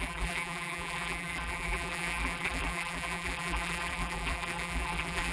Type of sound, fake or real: fake